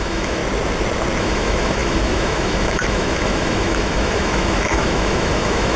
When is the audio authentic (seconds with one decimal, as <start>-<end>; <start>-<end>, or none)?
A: 0.4-1.2

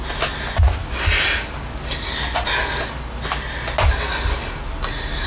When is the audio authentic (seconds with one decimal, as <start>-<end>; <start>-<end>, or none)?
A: 0.0-5.3

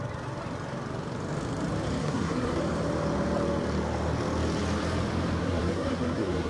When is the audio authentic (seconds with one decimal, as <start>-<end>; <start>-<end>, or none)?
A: 0.0-2.0; 2.6-5.4

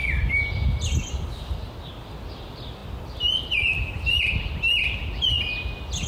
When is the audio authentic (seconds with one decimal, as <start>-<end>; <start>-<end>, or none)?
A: 0.0-6.1

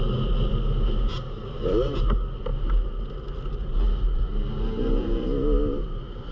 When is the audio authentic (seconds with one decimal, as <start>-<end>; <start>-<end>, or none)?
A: 0.0-6.3